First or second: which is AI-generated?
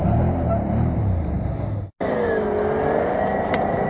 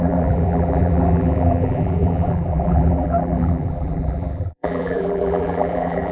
second